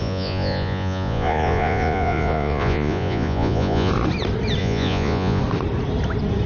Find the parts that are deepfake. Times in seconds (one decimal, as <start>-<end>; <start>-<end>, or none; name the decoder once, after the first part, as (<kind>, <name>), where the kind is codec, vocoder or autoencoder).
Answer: 0.0-3.9 (vocoder, Vocos); 4.6-5.4